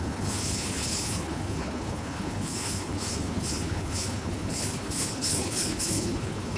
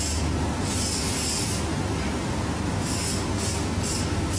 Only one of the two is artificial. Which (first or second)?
first